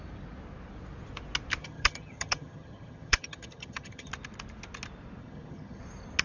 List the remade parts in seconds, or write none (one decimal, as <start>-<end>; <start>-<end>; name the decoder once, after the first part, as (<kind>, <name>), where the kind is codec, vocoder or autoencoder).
1.6-4.1 (vocoder, HiFi-GAN); 5.2-5.8